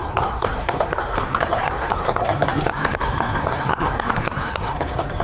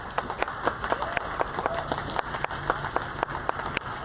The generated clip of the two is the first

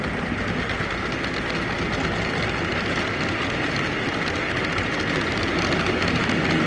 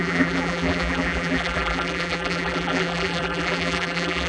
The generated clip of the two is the second